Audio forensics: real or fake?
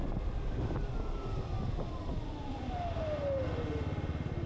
real